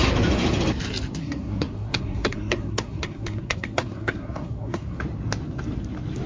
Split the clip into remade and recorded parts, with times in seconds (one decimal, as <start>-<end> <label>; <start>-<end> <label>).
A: 0.0-1.2 recorded; 1.2-5.0 remade; 5.0-6.3 recorded